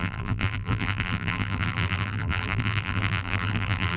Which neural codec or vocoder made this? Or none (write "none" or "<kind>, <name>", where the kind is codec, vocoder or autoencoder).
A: vocoder, BigVGAN v2